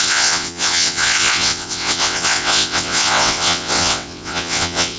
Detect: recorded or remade remade